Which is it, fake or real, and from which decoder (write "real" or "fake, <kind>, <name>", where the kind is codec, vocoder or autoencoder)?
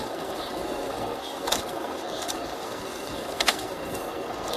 fake, codec, SNAC